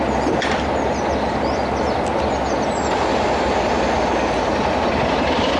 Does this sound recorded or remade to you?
recorded